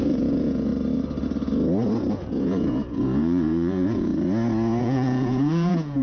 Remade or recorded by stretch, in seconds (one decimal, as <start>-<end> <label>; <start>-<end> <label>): 0.0-0.7 remade; 0.7-2.1 recorded; 2.1-4.1 remade; 4.1-4.8 recorded; 4.8-6.0 remade